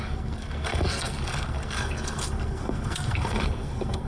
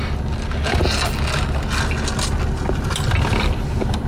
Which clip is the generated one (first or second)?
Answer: first